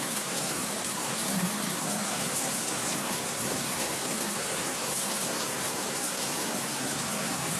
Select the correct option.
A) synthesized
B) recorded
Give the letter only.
A